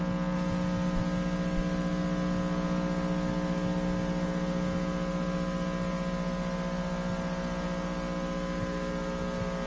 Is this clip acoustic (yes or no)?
yes